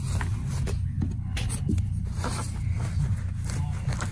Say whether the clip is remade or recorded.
recorded